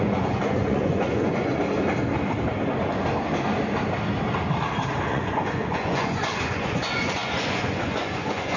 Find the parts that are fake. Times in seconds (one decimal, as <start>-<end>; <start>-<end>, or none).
0.0-1.5; 5.1-8.6

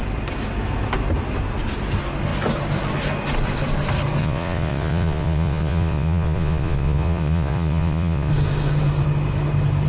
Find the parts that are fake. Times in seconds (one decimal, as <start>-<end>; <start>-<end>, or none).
4.2-8.3

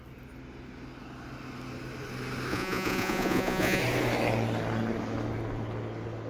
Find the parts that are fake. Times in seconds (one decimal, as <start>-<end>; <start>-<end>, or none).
2.5-3.8

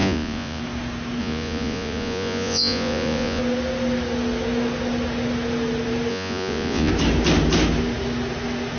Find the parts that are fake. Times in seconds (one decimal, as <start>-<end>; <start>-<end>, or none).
0.0-0.6; 1.2-3.4; 6.1-6.9

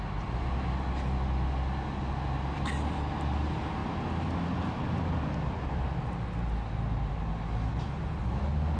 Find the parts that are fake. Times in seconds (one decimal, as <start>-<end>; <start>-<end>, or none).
none

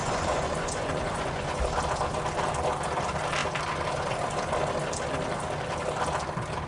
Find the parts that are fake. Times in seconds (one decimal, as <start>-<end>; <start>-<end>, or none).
0.0-1.6

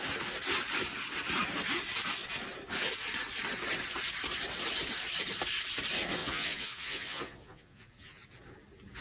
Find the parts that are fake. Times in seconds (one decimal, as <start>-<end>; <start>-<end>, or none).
6.2-8.3

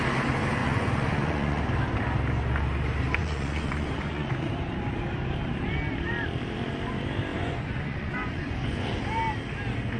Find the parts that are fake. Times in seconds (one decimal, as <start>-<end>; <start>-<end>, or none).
0.6-1.6; 3.2-4.5; 7.3-9.0